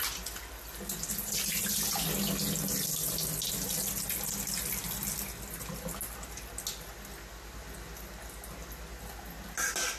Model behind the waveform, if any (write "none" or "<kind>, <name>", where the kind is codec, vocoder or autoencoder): none